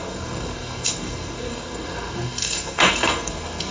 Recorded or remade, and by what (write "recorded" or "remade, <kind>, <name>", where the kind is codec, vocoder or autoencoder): remade, codec, SNAC